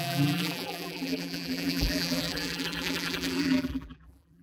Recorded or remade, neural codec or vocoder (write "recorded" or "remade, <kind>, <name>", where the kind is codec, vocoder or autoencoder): remade, vocoder, BigVGAN v2